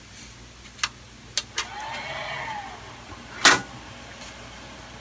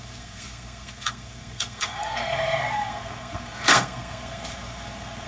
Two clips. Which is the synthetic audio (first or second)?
second